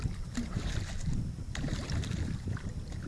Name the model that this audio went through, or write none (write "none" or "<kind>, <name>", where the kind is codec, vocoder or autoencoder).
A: vocoder, BigVGAN v2